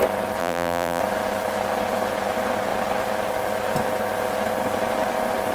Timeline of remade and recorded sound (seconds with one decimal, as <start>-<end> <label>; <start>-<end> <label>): 0.0-0.4 recorded; 0.4-1.0 remade; 1.0-5.5 recorded